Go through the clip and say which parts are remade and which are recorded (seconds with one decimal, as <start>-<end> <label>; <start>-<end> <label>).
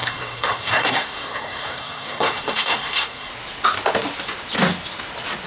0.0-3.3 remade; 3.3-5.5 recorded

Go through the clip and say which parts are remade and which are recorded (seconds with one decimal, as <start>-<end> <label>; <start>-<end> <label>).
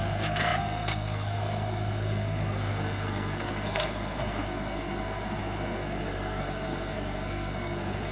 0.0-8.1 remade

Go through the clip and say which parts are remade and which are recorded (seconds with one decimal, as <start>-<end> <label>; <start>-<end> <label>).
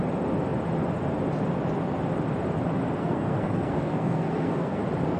0.0-3.0 recorded; 3.0-4.8 remade; 4.8-5.2 recorded